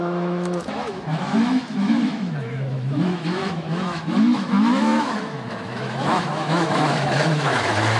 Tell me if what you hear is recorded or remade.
remade